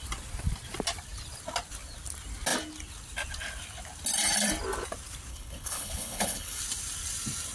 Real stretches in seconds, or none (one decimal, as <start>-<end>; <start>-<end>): 0.0-5.3; 6.6-7.5

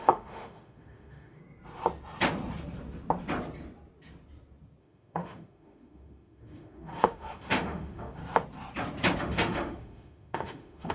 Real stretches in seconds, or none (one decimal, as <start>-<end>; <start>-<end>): 1.4-4.8; 8.2-9.2

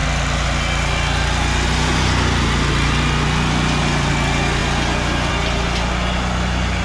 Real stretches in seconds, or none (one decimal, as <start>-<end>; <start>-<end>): 0.0-6.8

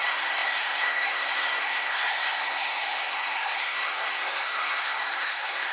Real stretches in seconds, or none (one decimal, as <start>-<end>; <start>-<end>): none